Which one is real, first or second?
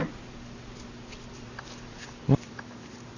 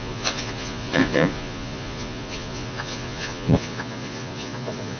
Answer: first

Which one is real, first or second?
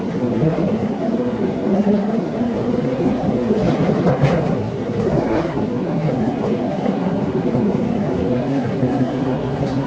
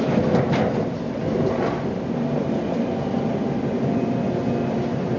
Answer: second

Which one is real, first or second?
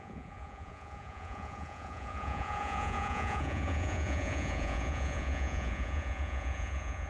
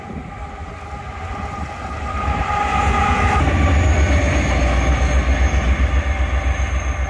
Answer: second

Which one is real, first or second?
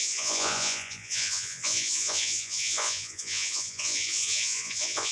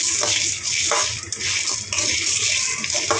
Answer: second